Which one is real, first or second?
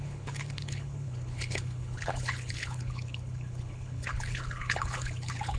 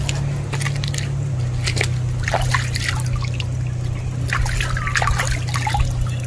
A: second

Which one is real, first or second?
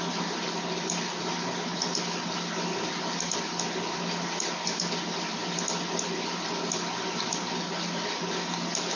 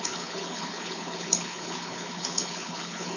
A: first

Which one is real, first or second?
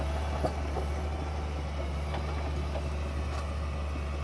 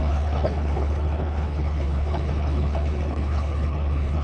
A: first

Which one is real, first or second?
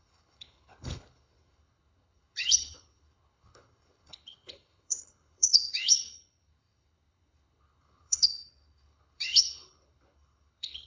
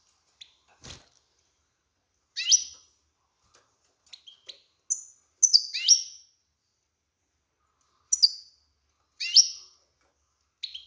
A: second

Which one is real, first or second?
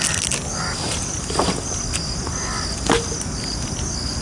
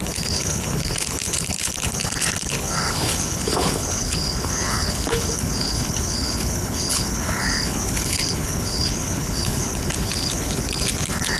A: first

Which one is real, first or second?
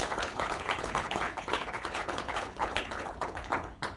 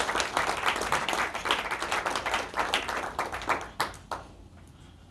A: second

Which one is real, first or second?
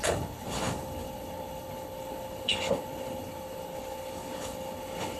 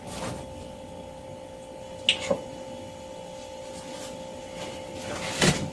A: second